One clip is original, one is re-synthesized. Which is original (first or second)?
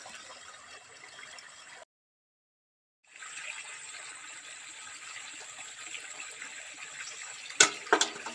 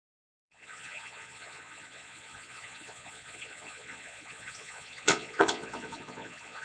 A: first